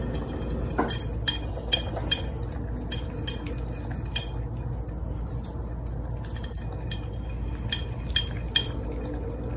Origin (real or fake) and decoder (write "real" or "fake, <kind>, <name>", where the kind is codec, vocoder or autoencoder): real